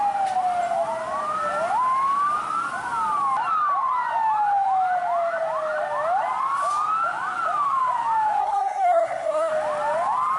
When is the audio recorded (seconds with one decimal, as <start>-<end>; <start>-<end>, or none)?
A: 0.0-8.4; 9.5-10.4